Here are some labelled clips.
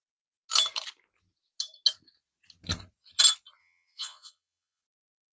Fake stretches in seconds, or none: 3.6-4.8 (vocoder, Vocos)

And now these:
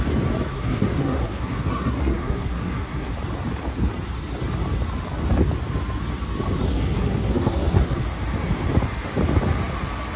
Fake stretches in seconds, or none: 0.5-3.1 (codec, SNAC); 6.7-8.0

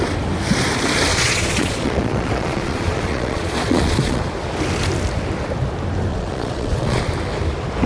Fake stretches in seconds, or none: 1.1-4.2 (vocoder, Vocos); 6.1-7.0

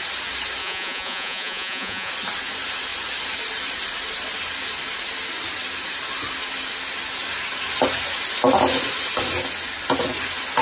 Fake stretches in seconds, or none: 0.6-2.1 (vocoder, Vocos)

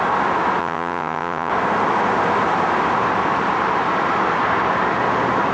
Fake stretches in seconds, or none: 0.6-1.5 (vocoder, HiFi-GAN)

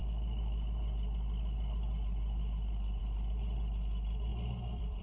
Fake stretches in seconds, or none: 4.3-5.0 (vocoder, BigVGAN v2)